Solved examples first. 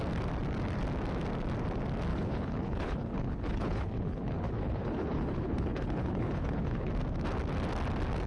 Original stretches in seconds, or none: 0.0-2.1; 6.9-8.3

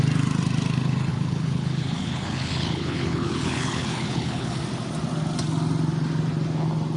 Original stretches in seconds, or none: 0.0-1.1; 4.6-7.0

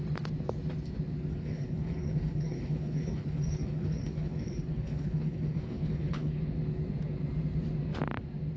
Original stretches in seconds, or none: 0.0-1.3; 6.4-8.6

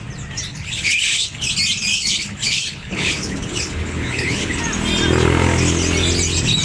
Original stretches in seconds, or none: 0.0-0.5; 1.5-1.9; 4.6-6.6

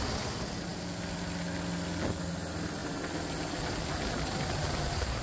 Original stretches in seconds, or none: 0.0-5.2

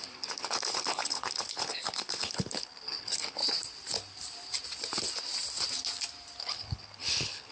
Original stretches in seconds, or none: 3.4-6.4

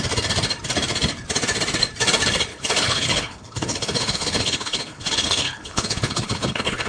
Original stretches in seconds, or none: 0.0-2.5